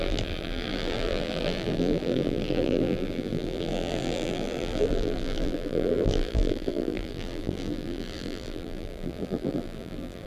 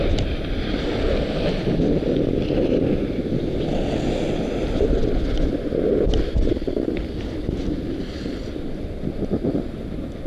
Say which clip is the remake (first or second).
first